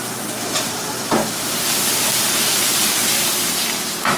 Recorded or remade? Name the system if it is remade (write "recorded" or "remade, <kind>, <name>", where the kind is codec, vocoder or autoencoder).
recorded